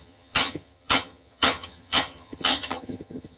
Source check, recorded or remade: remade